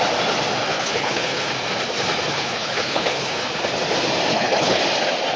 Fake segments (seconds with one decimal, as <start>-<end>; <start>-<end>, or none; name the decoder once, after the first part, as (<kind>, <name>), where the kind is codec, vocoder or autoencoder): 0.7-1.5 (codec, HILCodec); 2.3-3.5; 4.3-4.8